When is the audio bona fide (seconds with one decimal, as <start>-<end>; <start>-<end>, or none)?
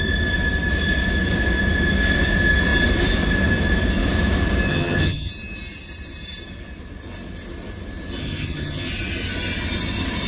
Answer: 0.0-4.7; 5.3-8.2; 8.9-10.3